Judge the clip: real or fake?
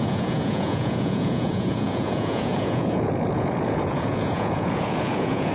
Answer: fake